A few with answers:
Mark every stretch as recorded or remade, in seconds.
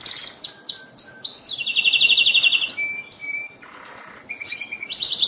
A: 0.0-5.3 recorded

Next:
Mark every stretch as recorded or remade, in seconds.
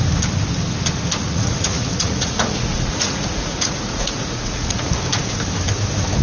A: 0.0-1.2 recorded; 1.2-4.9 remade; 4.9-6.2 recorded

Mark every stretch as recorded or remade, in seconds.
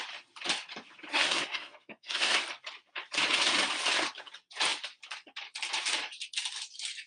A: 0.0-1.1 recorded; 1.1-2.4 remade; 2.4-7.1 recorded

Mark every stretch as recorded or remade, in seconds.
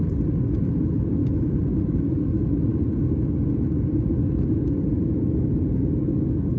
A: 0.0-1.2 recorded; 1.2-2.1 remade; 2.1-6.6 recorded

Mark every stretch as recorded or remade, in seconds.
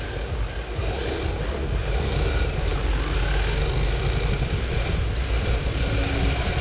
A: 0.0-6.6 recorded